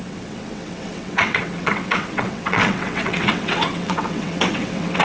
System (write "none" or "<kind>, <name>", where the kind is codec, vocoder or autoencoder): vocoder, WaveNeXt